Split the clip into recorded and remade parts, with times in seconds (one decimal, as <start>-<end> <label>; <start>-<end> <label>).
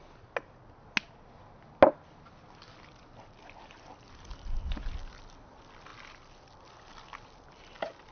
0.0-8.1 recorded